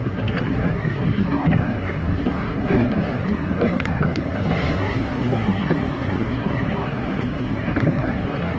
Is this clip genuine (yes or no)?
no